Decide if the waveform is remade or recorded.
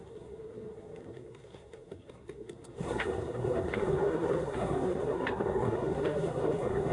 remade